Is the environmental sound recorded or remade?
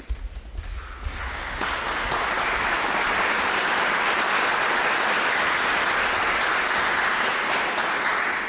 recorded